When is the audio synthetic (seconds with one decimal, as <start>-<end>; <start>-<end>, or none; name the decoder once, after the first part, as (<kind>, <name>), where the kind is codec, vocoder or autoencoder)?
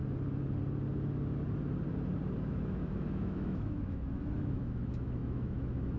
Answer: 2.5-6.0 (autoencoder, DAC-VAE)